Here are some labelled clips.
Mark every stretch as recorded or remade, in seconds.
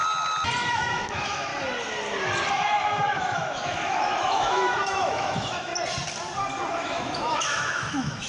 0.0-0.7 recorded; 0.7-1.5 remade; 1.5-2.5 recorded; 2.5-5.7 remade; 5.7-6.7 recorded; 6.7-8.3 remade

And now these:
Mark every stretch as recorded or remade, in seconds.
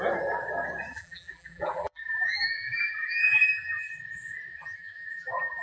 0.0-0.9 recorded; 0.9-3.9 remade; 3.9-4.5 recorded; 4.5-5.6 remade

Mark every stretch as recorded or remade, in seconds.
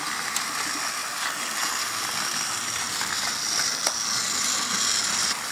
0.0-5.5 recorded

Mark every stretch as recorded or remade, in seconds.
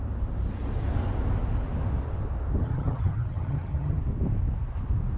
0.0-2.6 recorded; 2.6-4.0 remade; 4.0-5.2 recorded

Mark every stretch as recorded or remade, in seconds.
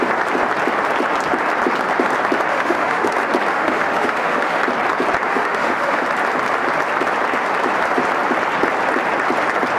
0.0-2.5 recorded; 2.5-3.1 remade; 3.1-3.5 recorded; 3.5-4.6 remade; 4.6-5.3 recorded; 5.3-6.0 remade; 6.0-9.8 recorded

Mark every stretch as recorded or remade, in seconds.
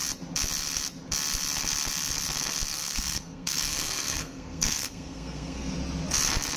0.0-2.7 recorded; 2.7-5.7 remade; 5.7-6.6 recorded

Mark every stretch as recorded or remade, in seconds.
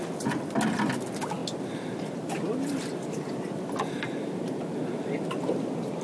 0.0-6.0 recorded